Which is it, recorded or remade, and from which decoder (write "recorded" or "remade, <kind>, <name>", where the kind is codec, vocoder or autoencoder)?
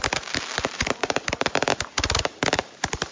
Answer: remade, vocoder, BigVGAN v2